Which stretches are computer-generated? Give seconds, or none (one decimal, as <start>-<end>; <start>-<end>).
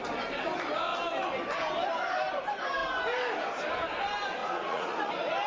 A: 4.4-5.1